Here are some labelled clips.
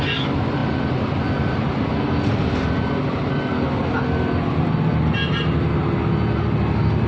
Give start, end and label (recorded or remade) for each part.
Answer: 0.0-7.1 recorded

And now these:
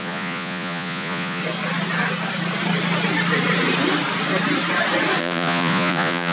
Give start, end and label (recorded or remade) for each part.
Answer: 0.0-1.4 remade; 1.4-5.2 recorded; 5.2-6.3 remade